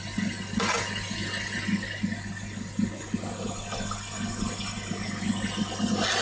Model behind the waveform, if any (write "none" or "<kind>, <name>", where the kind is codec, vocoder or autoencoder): none